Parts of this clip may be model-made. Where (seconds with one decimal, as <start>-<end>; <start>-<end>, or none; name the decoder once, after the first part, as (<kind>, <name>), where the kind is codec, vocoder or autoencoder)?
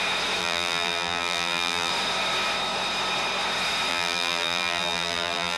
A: 0.4-1.9 (vocoder, BigVGAN v2); 3.9-5.6